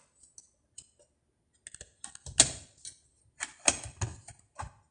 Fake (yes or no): no